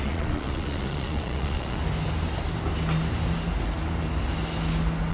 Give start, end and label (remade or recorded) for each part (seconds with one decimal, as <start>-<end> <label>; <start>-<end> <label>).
0.0-1.8 remade; 1.8-5.1 recorded